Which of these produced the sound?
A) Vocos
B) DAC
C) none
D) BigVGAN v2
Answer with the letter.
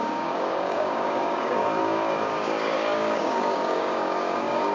B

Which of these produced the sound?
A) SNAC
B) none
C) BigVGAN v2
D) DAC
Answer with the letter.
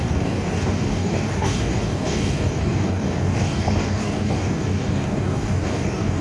D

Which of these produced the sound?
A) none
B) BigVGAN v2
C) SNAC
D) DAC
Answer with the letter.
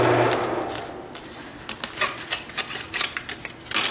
A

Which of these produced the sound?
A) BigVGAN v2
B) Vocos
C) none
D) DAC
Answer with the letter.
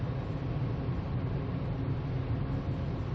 C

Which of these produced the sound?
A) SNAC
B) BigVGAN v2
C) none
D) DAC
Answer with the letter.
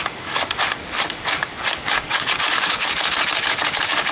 D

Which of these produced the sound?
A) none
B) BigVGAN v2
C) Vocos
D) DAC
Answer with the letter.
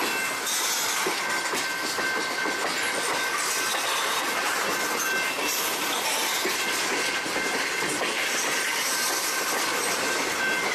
A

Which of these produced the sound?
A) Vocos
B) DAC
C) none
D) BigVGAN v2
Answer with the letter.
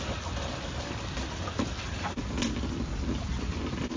C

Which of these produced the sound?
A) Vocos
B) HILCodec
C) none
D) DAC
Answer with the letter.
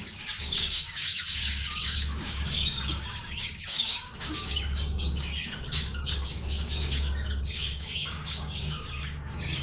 D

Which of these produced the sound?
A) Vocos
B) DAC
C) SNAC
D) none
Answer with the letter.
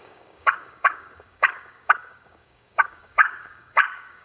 B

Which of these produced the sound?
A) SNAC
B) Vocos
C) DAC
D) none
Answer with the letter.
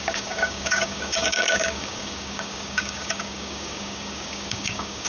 C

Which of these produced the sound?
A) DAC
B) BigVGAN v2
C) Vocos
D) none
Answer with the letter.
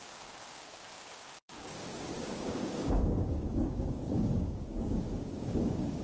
A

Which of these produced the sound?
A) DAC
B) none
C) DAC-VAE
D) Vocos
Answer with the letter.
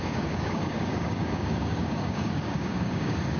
A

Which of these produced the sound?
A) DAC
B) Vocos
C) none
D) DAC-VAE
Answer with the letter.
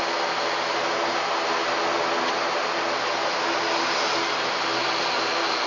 C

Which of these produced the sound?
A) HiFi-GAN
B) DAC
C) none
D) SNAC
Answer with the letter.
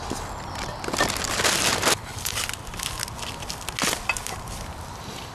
C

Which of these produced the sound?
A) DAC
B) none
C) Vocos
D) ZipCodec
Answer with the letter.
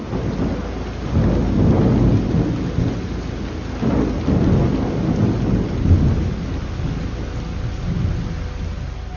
B